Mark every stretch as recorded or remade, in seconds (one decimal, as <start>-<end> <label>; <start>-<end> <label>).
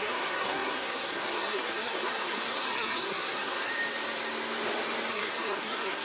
0.0-3.7 remade; 3.7-5.1 recorded; 5.1-6.0 remade